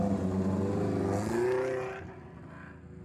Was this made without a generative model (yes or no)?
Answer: yes